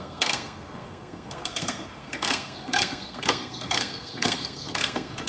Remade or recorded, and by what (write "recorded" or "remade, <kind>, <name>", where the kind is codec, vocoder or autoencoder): remade, codec, SNAC